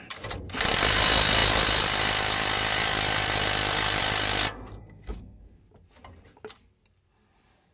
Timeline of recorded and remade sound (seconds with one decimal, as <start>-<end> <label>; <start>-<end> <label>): 0.0-4.8 recorded; 4.8-5.4 remade; 5.4-7.7 recorded